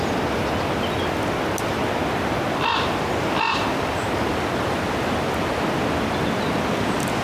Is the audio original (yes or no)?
yes